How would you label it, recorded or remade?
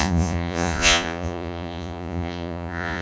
remade